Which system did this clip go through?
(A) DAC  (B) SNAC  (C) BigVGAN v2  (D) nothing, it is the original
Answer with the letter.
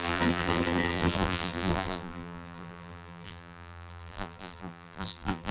C